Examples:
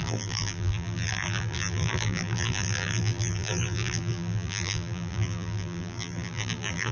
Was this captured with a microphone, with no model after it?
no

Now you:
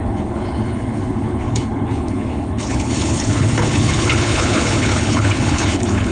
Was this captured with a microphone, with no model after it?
no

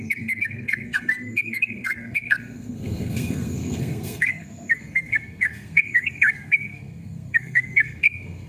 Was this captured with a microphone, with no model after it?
no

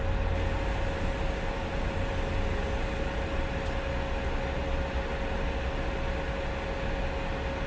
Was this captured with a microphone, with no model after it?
yes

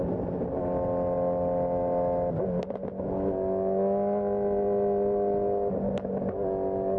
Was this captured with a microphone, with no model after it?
yes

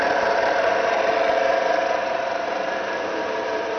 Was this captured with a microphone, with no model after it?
no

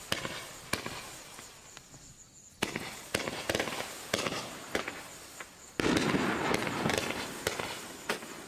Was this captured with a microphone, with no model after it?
yes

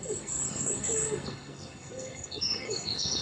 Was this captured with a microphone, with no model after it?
no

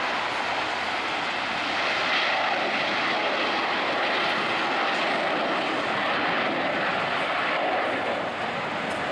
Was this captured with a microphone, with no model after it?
yes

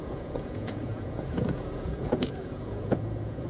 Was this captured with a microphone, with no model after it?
no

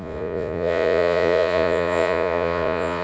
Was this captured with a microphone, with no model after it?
no